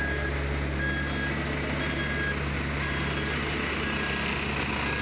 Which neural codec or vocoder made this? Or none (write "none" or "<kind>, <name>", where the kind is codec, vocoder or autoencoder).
none